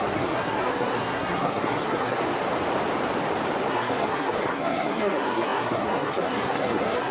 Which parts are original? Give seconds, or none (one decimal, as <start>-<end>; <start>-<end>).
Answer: 2.2-3.7